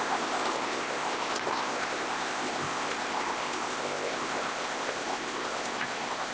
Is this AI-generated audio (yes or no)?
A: yes